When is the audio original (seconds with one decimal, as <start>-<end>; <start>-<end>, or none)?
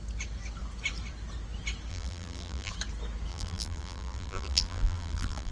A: 0.0-1.9; 2.7-3.3